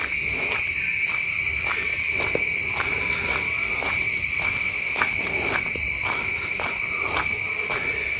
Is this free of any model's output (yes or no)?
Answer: yes